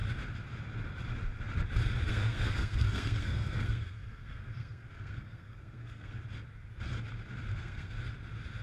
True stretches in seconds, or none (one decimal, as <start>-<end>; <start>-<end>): 0.0-2.1; 6.2-7.5; 8.0-8.6